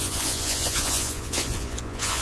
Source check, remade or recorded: remade